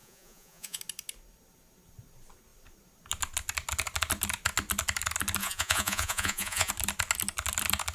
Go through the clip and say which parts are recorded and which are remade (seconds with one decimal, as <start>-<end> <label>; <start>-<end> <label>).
0.0-0.8 remade; 0.8-5.4 recorded; 5.4-6.7 remade; 6.7-7.9 recorded